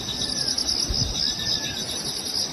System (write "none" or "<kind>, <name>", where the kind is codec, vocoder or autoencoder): none